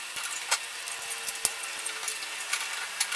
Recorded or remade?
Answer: recorded